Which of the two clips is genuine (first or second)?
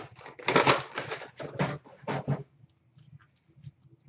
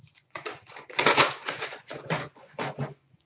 first